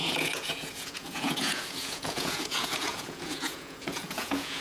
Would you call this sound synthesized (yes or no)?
yes